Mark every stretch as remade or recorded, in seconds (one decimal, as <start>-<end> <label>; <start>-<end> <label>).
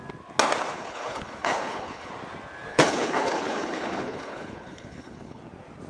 0.0-0.7 recorded; 0.7-2.1 remade; 2.1-2.7 recorded; 2.7-5.4 remade; 5.4-5.9 recorded